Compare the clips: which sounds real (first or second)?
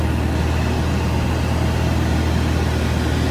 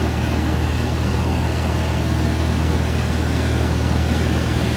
first